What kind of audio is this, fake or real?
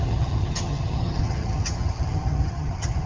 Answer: fake